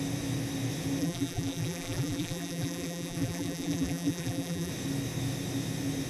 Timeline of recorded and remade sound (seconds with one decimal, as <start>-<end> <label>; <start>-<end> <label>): 0.0-1.0 recorded; 1.0-4.7 remade; 4.7-6.1 recorded